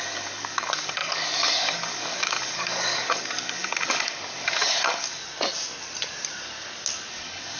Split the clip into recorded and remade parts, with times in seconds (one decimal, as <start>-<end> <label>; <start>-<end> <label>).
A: 0.0-5.2 remade; 5.2-7.1 recorded; 7.1-7.6 remade